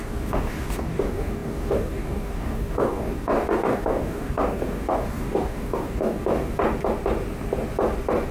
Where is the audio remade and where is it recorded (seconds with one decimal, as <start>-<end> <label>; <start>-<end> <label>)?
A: 0.0-6.6 remade; 6.6-8.3 recorded